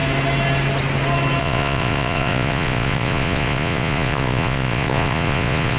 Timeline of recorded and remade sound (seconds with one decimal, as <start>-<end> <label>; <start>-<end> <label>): 0.0-1.4 recorded; 1.4-5.8 remade